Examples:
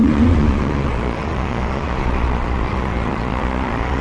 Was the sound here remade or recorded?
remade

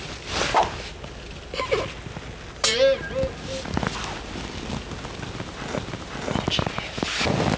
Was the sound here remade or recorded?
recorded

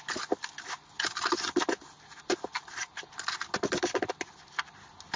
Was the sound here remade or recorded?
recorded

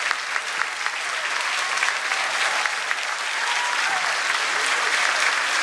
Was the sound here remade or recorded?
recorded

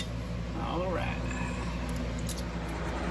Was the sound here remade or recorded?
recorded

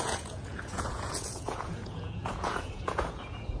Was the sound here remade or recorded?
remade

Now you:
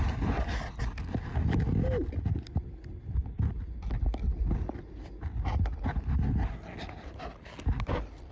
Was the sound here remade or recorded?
recorded